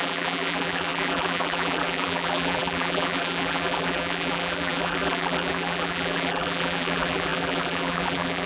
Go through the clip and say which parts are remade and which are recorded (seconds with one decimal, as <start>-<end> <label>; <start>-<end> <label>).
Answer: 0.0-8.5 remade